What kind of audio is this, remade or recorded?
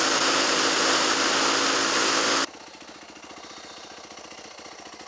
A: recorded